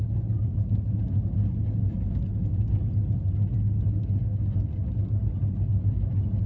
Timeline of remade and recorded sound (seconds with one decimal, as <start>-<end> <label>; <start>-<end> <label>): 0.0-6.5 recorded